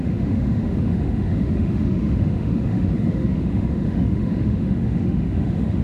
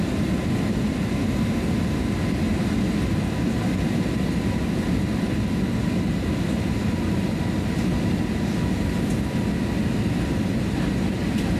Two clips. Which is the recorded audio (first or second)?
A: second